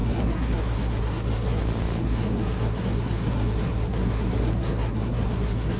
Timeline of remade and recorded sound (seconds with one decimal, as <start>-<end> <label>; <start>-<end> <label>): 0.0-1.6 remade; 1.6-2.0 recorded; 2.0-5.8 remade